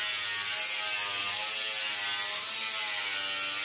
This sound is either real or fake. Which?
real